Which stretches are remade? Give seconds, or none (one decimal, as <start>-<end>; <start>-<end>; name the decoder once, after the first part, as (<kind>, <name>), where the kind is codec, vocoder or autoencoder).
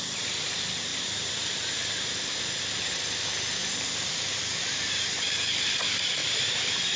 0.9-2.4 (vocoder, BigVGAN v2); 3.6-4.7; 6.2-7.0